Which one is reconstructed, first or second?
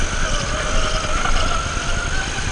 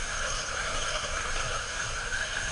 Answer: second